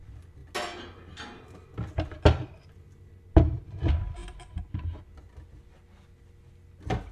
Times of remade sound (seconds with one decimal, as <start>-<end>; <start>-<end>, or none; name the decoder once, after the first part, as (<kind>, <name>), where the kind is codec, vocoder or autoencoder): none